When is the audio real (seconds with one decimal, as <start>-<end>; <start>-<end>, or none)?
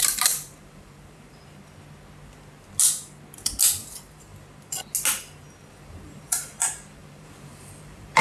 1.4-3.8; 4.3-5.6